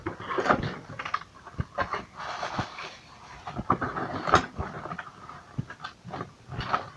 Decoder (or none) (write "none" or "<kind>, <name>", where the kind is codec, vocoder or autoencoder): none